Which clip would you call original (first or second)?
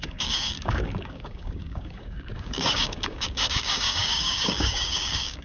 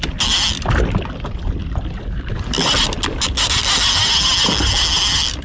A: second